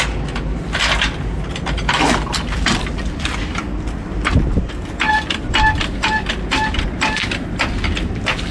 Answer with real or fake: real